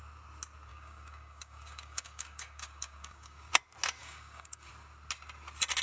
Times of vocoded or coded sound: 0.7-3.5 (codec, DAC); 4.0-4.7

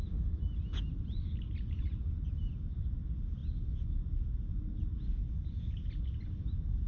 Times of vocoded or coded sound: none